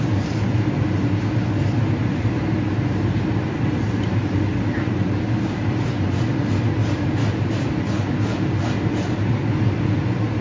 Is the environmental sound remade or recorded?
recorded